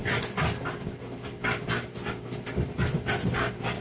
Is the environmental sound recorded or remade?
remade